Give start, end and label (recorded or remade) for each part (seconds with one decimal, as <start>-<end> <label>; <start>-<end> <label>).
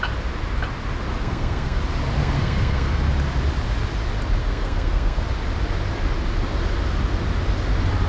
0.0-1.1 recorded; 1.1-1.8 remade; 1.8-2.2 recorded; 2.2-3.0 remade; 3.0-4.4 recorded; 4.4-5.2 remade; 5.2-8.1 recorded